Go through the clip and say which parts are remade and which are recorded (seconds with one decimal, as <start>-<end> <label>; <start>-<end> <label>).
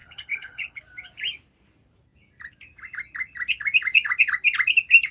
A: 0.0-0.8 remade; 0.8-5.1 recorded